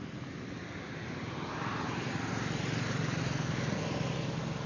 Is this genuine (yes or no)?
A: yes